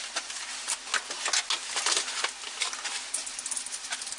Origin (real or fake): real